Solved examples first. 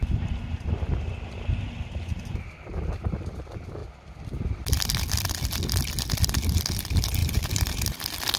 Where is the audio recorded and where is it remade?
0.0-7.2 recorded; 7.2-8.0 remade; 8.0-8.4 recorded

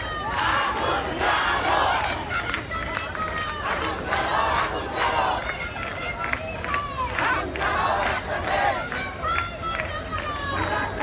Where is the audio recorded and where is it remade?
0.0-11.0 recorded

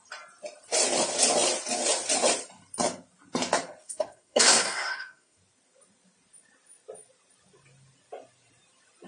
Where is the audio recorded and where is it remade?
0.0-3.8 recorded; 3.8-5.4 remade; 5.4-9.1 recorded